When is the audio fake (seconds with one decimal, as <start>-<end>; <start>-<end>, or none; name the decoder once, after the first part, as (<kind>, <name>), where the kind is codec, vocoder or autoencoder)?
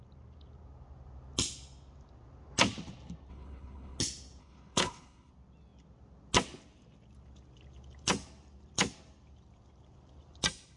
3.3-4.0 (codec, HILCodec); 4.4-5.3